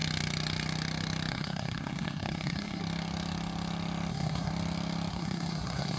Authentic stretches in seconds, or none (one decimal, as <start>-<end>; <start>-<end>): 0.0-1.3; 2.8-4.1; 4.5-5.1